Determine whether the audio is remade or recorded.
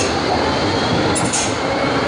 recorded